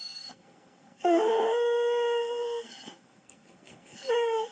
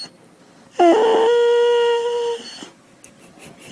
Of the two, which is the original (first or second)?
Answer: second